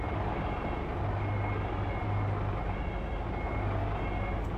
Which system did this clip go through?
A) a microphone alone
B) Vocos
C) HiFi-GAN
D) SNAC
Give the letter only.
A